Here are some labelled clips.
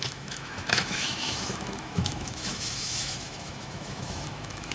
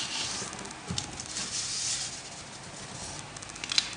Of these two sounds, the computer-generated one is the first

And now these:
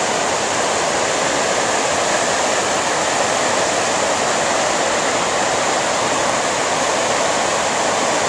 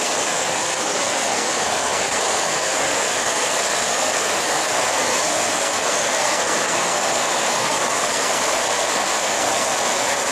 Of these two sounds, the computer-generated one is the second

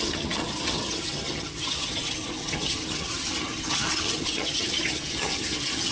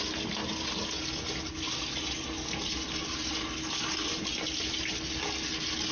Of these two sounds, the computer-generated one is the first